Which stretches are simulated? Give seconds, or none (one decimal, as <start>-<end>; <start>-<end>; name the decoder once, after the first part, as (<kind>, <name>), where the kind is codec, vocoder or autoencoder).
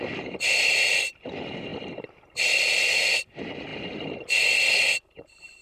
none